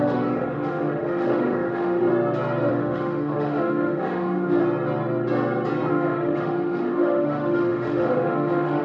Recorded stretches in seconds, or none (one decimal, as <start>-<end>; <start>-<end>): 2.1-2.7; 4.6-5.9

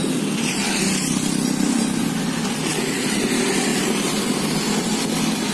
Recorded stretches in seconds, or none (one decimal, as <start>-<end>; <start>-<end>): 0.0-3.7; 4.6-5.5

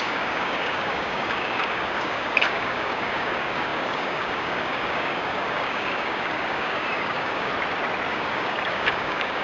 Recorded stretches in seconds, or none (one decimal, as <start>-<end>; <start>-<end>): 7.5-8.1

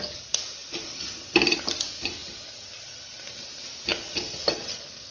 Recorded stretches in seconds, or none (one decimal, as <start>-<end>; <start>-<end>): 0.0-0.6; 1.6-2.2; 2.8-5.1

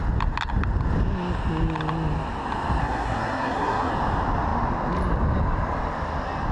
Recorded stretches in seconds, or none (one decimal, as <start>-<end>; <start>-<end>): 0.0-2.8; 3.9-6.5